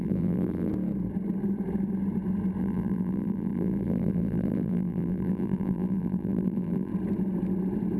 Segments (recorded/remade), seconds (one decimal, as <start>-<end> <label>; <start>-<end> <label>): 0.0-0.7 remade; 0.7-2.6 recorded; 2.6-6.9 remade; 6.9-8.0 recorded